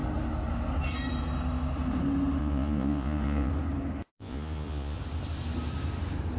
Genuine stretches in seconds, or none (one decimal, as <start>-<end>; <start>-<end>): 0.0-2.4; 3.5-4.1; 5.0-6.4